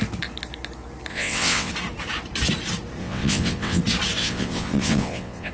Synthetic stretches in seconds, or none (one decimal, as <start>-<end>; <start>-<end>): 1.1-1.7; 3.0-3.8; 4.2-5.5